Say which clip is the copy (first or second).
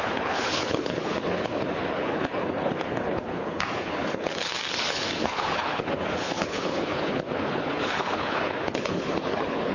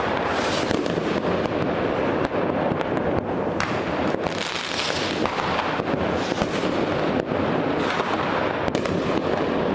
first